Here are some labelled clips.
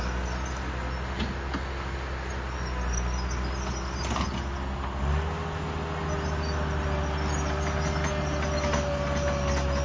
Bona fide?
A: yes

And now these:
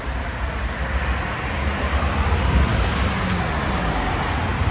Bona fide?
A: yes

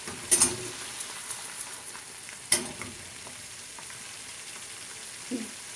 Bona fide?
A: yes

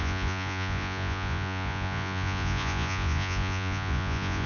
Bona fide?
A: no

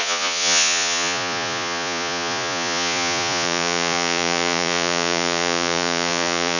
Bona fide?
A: no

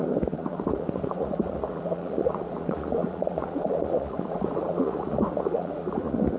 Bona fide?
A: no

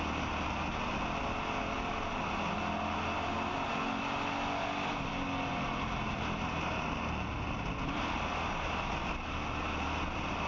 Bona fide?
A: yes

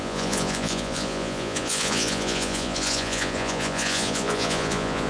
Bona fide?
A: no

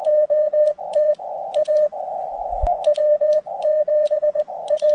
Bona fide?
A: no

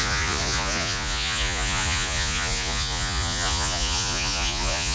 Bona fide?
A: no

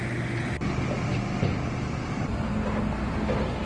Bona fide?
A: yes